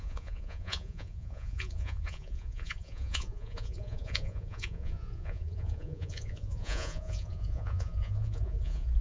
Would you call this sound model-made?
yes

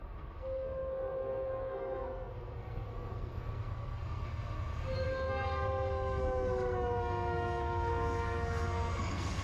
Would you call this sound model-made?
yes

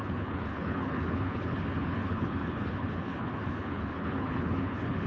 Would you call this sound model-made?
yes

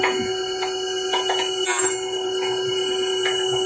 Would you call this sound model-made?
yes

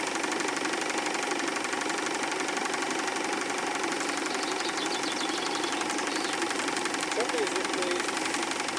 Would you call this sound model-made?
no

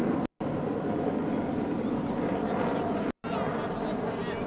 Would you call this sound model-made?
no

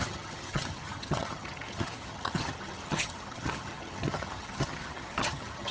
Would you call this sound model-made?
yes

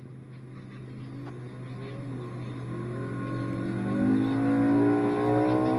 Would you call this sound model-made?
no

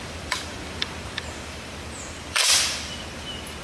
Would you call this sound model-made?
yes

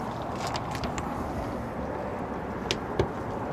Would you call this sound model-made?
no